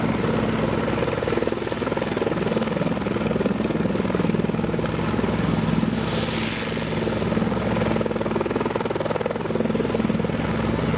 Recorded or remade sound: recorded